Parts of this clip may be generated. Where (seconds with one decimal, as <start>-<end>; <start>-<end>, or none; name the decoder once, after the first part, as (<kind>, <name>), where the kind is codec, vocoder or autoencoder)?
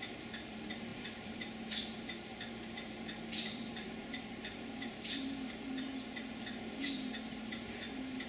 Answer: 0.0-5.9 (vocoder, BigVGAN v2); 6.8-8.3